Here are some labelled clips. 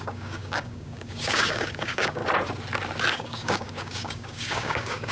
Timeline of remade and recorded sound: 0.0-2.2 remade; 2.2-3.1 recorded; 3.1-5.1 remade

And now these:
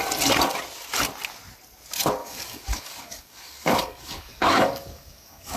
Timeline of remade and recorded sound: 0.0-2.2 recorded; 2.2-5.6 remade

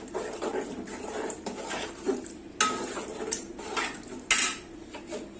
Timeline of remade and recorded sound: 0.0-5.4 recorded